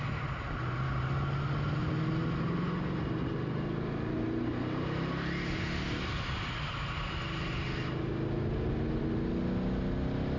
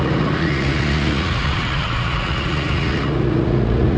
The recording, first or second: first